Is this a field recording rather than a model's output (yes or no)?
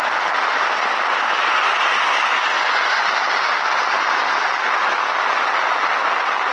yes